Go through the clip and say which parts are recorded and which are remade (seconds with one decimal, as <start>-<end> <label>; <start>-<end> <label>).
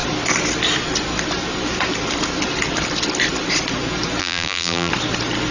0.0-4.2 recorded; 4.2-4.9 remade; 4.9-5.5 recorded